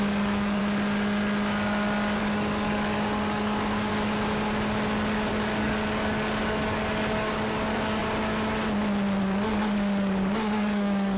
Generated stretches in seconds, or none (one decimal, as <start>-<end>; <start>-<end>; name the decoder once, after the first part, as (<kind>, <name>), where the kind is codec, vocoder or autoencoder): 0.0-0.6 (codec, DAC); 2.2-3.9; 5.3-8.0; 9.2-11.2